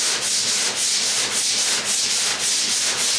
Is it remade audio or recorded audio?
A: recorded